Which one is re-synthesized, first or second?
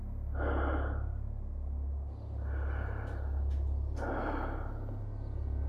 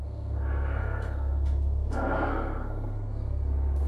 second